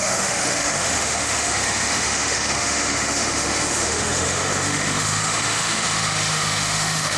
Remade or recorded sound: remade